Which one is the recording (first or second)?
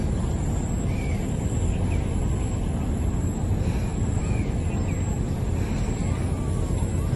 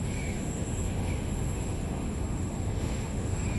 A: first